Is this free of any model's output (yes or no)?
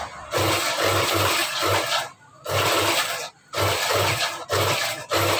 yes